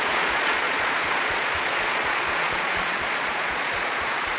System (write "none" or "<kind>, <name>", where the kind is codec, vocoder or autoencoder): vocoder, Vocos